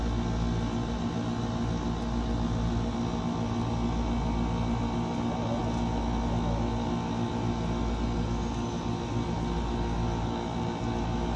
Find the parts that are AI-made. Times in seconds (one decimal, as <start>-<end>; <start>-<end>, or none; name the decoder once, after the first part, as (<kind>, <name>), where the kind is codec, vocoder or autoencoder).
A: none